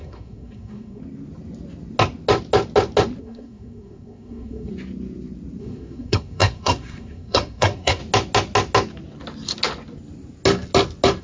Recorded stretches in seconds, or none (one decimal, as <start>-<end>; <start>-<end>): 1.0-3.2; 4.7-5.6; 8.0-11.2